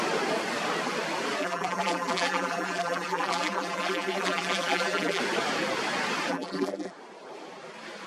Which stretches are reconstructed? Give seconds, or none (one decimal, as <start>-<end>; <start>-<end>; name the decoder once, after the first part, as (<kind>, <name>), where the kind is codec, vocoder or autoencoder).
1.4-5.2 (vocoder, BigVGAN v2); 6.3-6.9